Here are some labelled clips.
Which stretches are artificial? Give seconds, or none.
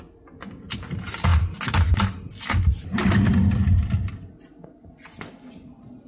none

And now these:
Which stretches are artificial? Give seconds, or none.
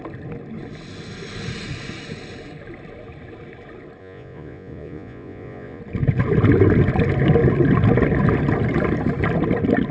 4.0-5.8 (vocoder, Vocos)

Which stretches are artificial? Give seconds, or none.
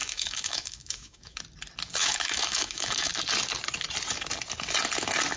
0.0-1.4 (autoencoder, DAC-VAE); 2.0-3.1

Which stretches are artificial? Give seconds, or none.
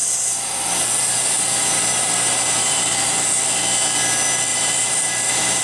0.0-3.4 (vocoder, BigVGAN v2); 4.5-5.6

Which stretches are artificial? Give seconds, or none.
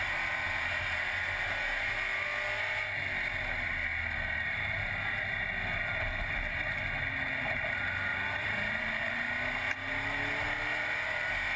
8.1-9.1 (vocoder, BigVGAN v2)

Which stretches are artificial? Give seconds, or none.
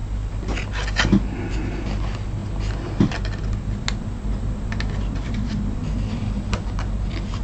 none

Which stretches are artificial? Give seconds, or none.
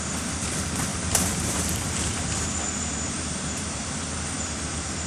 0.9-4.0 (vocoder, BigVGAN v2)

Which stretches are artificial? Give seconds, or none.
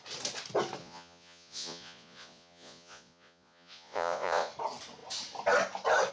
0.8-4.5 (vocoder, Vocos)